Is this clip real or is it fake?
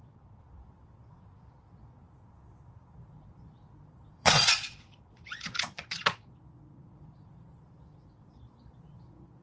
fake